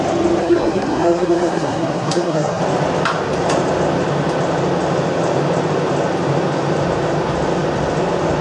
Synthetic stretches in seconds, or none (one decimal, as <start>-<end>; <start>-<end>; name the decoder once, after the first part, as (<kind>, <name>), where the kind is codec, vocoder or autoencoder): 0.4-2.6 (codec, SNAC)